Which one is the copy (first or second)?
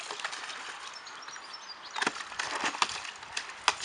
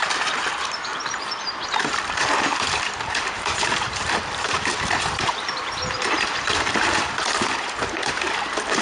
second